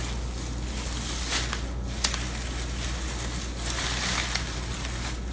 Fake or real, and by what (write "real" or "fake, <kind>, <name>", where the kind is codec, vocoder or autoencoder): real